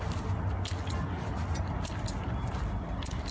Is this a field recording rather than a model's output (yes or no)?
yes